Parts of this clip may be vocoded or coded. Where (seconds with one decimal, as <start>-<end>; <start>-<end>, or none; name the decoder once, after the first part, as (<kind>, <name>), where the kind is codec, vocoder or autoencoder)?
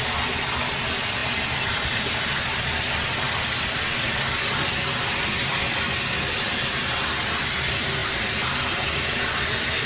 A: none